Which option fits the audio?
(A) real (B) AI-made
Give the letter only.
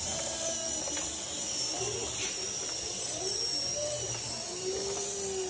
A